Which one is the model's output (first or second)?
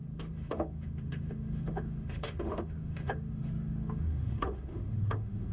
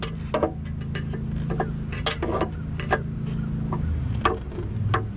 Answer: first